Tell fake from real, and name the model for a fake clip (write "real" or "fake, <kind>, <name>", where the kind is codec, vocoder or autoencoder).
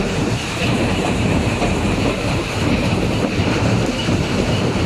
fake, vocoder, BigVGAN v2